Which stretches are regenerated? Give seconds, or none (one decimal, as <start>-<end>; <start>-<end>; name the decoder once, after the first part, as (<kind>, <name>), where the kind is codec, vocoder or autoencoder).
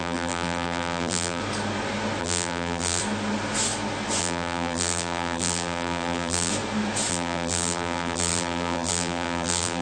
0.0-1.4 (vocoder, BigVGAN v2); 2.2-3.0; 4.2-6.5; 7.1-9.8